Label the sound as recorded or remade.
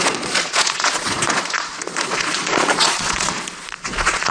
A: remade